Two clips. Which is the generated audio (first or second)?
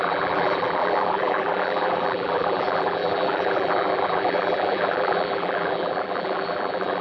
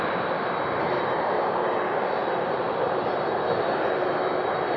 first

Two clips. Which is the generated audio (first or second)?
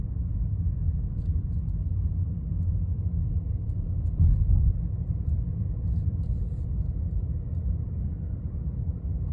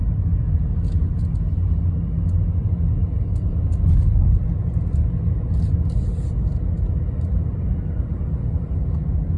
first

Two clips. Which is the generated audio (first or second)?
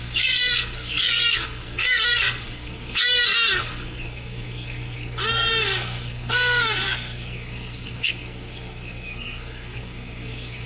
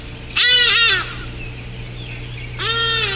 first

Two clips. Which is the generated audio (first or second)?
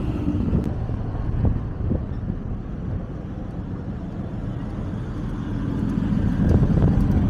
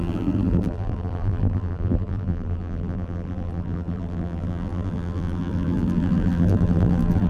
second